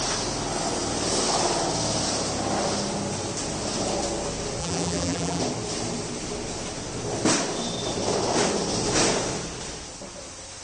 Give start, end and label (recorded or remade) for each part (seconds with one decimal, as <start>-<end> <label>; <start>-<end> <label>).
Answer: 0.0-4.6 recorded; 4.6-5.4 remade; 5.4-10.6 recorded